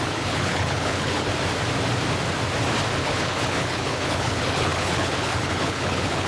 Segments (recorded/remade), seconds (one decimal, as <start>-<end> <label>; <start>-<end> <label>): 0.0-1.3 remade; 1.3-3.0 recorded; 3.0-6.3 remade